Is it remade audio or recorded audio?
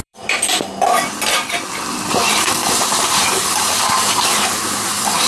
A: remade